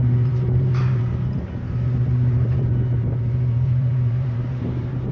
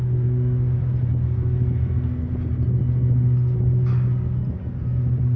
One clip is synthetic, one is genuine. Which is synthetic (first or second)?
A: first